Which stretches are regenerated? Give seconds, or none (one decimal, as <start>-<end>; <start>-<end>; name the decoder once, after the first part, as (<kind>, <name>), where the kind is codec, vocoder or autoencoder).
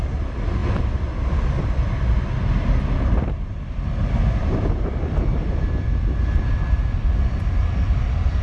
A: none